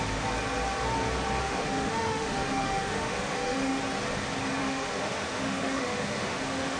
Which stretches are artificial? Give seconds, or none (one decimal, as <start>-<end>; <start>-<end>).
1.4-3.8; 4.6-6.8